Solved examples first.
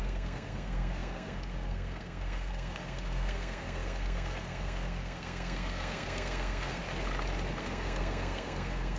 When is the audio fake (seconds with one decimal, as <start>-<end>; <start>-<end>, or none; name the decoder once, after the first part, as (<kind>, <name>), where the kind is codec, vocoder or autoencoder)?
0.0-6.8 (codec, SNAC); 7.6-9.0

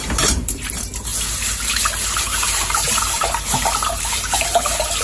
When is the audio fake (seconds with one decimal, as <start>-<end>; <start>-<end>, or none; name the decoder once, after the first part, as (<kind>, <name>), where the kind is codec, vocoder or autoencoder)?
0.0-1.1 (vocoder, BigVGAN v2); 2.2-5.0

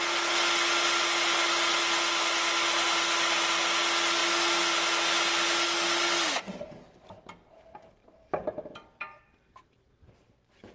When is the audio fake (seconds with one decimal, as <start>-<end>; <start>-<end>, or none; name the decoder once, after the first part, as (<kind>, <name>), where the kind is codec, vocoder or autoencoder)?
none

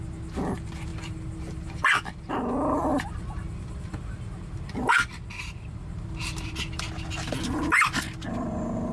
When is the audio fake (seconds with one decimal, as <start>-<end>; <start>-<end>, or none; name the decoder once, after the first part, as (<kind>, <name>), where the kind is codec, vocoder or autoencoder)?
0.9-2.3 (vocoder, BigVGAN v2); 2.9-6.9